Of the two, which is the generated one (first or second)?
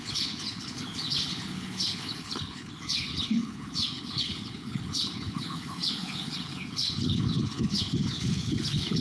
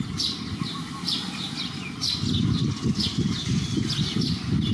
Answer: first